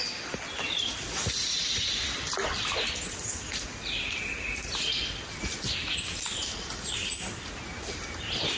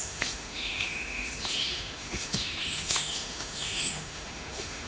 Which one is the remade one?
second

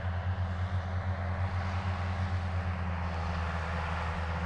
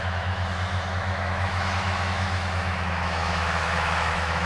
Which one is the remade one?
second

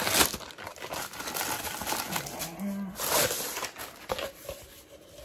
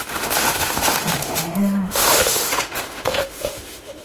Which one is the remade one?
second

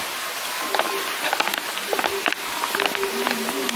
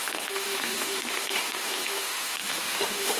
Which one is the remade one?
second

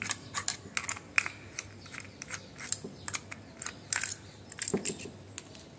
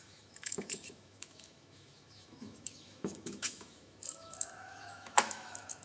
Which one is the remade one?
second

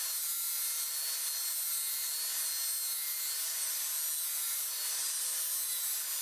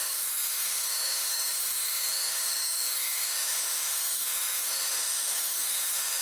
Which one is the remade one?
second